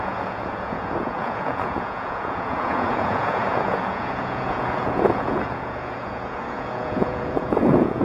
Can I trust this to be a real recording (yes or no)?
no